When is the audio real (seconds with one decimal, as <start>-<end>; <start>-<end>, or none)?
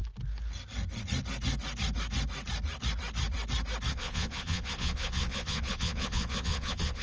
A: 0.0-3.9